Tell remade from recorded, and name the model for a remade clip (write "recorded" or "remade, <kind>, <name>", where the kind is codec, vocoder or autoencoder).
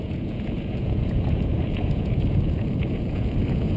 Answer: remade, vocoder, Vocos